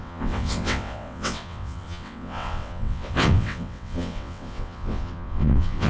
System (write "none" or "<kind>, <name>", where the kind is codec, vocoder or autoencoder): vocoder, WaveNeXt